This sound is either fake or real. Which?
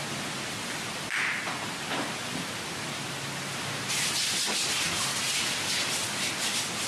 real